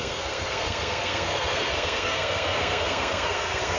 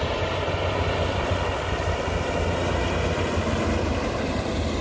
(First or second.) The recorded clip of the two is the second